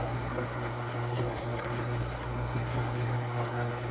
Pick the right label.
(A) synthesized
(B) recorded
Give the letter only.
A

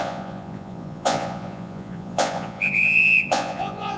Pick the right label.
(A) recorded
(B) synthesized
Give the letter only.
B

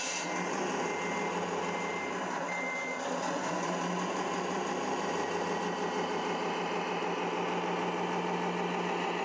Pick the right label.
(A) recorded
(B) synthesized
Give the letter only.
A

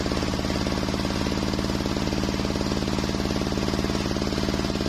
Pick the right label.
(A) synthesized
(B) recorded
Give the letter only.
B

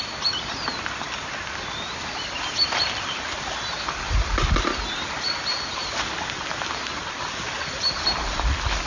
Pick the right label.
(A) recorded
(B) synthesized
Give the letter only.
A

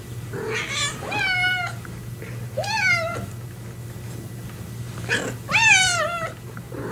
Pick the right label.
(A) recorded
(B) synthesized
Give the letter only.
A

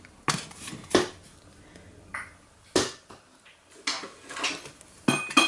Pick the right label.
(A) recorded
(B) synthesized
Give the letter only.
A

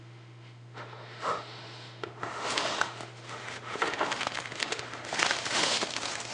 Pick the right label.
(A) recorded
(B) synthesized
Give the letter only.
B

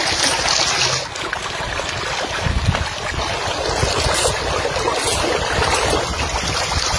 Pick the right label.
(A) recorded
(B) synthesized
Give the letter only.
A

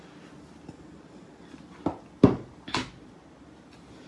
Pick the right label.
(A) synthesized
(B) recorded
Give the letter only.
B